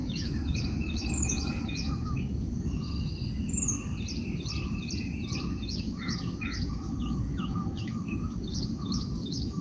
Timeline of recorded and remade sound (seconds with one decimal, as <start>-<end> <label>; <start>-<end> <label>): 0.0-2.8 remade; 2.8-5.4 recorded; 5.4-9.6 remade